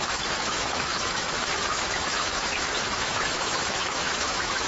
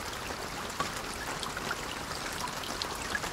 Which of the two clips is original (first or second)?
second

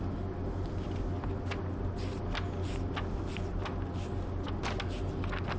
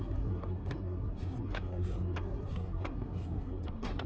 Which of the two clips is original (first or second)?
first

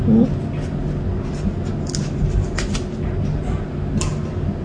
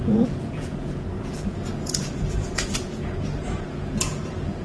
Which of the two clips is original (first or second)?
first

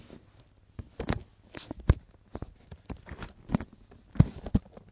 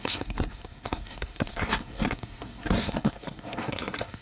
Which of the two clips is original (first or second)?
first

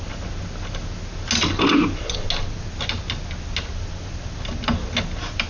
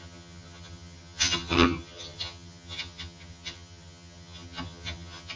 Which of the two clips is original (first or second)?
first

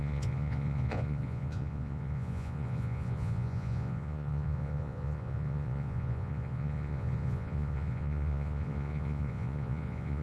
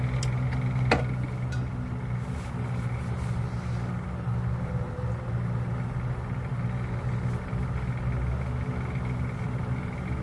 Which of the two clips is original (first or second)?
second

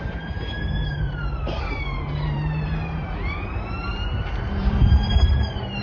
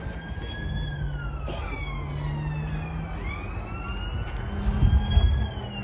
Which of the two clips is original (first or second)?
second